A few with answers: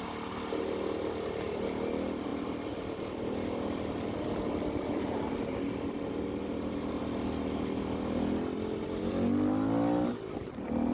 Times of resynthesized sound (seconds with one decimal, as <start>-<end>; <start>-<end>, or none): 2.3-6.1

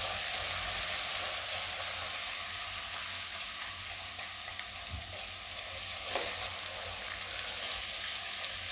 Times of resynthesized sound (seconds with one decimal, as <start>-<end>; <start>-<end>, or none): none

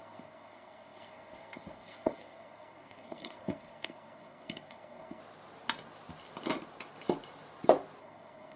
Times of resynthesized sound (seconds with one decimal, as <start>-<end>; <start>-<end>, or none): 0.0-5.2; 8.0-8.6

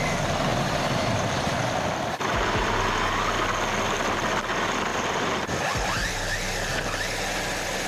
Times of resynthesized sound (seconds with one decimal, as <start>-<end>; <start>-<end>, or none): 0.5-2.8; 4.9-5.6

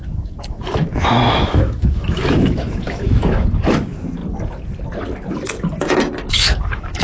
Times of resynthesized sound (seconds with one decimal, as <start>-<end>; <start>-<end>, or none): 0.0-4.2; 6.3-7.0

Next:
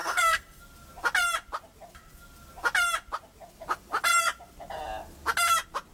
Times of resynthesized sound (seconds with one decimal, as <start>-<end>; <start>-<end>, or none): 0.0-0.6